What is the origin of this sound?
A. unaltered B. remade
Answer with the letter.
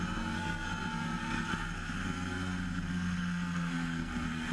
B